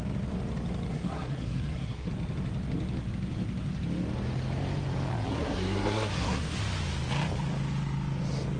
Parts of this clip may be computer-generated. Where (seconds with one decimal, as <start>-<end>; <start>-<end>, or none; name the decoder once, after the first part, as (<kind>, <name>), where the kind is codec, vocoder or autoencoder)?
0.9-2.1 (codec, SNAC); 5.3-6.6